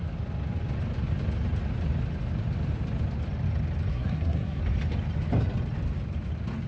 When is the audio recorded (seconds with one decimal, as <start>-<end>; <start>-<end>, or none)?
0.0-3.9; 4.6-6.7